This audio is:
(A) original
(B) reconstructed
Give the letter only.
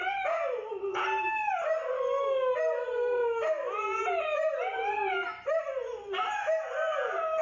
A